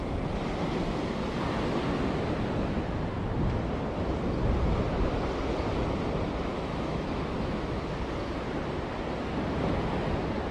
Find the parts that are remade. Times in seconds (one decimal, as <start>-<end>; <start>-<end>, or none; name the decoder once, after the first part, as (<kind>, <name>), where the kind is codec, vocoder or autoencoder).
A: 6.5-7.9 (autoencoder, DAC-VAE)